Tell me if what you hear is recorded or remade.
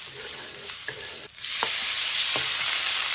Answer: recorded